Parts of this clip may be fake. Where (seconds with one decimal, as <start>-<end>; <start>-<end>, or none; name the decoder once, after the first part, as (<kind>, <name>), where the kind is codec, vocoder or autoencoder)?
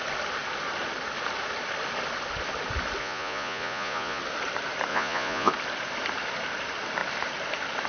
3.0-4.2 (vocoder, Vocos); 4.9-5.5